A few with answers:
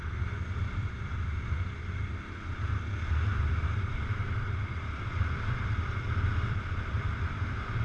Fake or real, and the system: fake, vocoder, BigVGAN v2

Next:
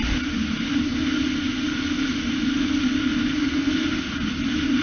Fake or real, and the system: real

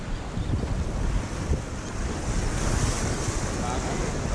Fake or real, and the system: real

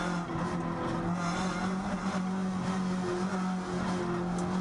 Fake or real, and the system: real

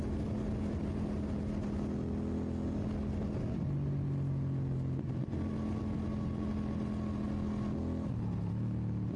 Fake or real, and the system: real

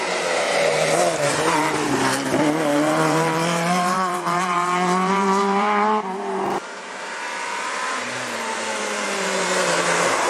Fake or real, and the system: fake, vocoder, BigVGAN v2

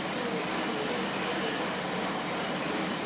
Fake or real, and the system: fake, vocoder, BigVGAN v2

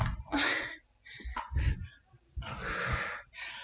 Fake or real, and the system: real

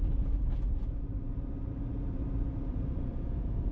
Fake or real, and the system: fake, vocoder, BigVGAN v2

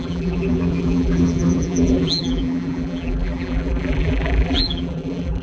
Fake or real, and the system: fake, vocoder, BigVGAN v2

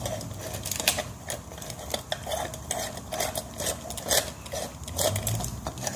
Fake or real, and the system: real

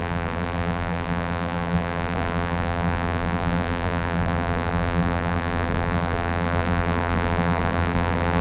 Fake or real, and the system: fake, vocoder, BigVGAN v2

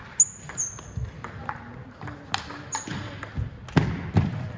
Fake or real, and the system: real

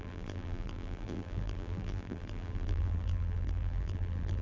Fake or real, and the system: fake, vocoder, BigVGAN v2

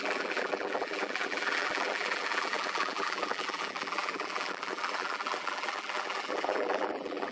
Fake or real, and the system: fake, vocoder, BigVGAN v2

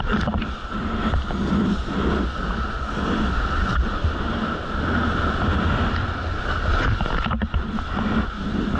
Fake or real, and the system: real